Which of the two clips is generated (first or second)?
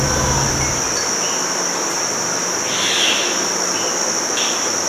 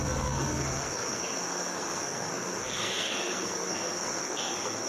second